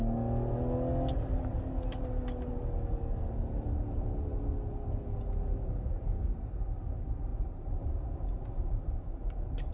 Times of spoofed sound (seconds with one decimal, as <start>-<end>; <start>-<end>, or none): 7.3-9.7